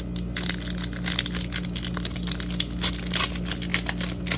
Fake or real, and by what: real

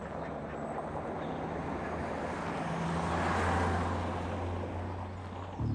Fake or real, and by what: real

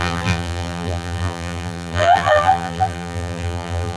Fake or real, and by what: fake, vocoder, BigVGAN v2